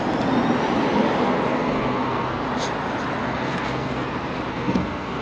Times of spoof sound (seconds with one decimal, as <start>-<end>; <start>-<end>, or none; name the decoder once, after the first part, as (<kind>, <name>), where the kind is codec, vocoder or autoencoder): 1.5-2.4 (codec, SNAC); 3.2-4.1; 4.5-5.2

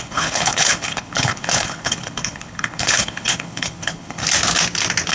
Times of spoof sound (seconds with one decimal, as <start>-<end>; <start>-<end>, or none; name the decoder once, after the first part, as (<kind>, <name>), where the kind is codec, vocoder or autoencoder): 0.0-4.2 (codec, HILCodec)